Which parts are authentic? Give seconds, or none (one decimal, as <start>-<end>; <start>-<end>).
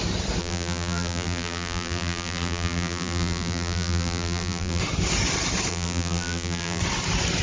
0.0-0.4; 4.8-5.7; 6.8-7.4